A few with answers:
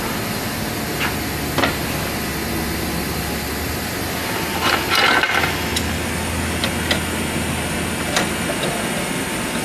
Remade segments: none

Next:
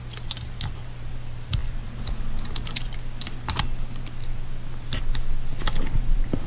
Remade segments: none

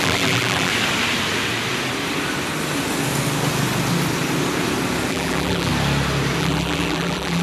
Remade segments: 0.0-0.7 (vocoder, BigVGAN v2); 5.1-5.7; 6.4-7.4

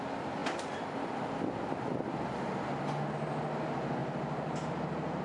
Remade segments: 4.0-5.2 (vocoder, BigVGAN v2)

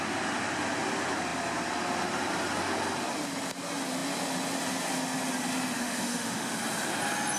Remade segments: 5.8-6.6 (autoencoder, DAC-VAE)

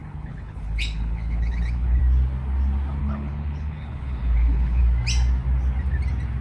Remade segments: 0.0-2.0 (codec, HILCodec); 3.0-4.8

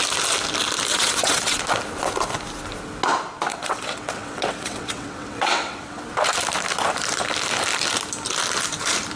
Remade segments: 0.9-1.6 (vocoder, WaveNeXt); 3.5-6.0